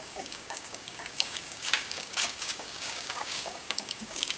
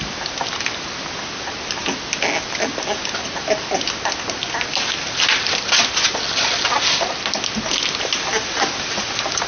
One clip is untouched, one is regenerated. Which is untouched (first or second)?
second